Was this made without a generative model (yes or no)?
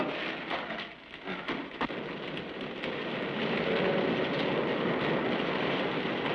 yes